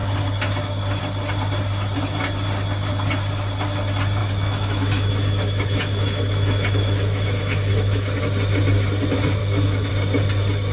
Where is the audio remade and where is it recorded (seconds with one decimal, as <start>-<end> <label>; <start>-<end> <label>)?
0.0-4.2 recorded; 4.2-8.2 remade; 8.2-9.4 recorded; 9.4-9.9 remade; 9.9-10.7 recorded